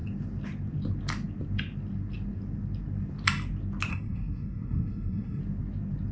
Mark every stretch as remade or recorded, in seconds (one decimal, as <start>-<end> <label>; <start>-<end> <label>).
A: 0.0-3.9 recorded; 3.9-5.4 remade; 5.4-6.1 recorded